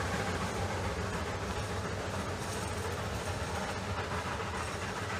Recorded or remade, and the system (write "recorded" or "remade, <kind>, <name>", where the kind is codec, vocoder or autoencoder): recorded